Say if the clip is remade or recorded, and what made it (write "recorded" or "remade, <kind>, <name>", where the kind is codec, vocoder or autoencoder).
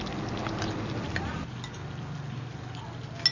recorded